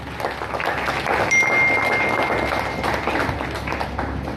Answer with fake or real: real